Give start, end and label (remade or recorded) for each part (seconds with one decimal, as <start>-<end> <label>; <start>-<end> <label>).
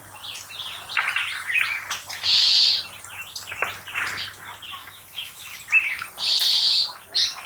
0.0-4.8 recorded; 4.8-5.6 remade; 5.6-7.5 recorded